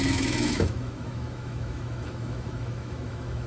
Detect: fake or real fake